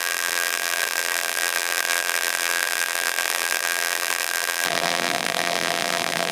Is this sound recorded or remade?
remade